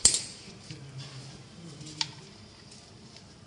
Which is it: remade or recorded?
recorded